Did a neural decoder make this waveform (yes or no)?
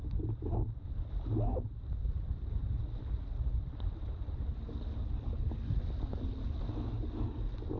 no